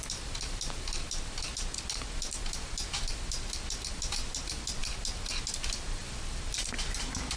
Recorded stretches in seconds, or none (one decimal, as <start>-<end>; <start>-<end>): 0.0-7.4